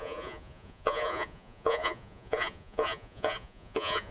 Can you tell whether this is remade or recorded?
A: remade